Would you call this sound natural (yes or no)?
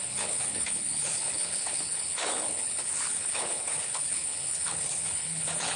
no